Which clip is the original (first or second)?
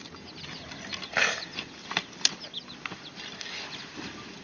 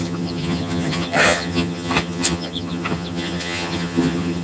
first